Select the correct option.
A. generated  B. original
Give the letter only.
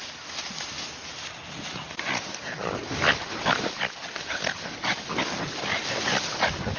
B